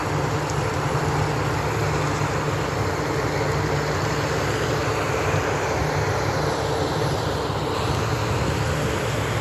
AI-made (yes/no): no